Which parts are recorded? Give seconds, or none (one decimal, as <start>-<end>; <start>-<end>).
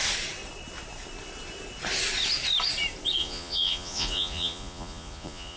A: 0.0-3.2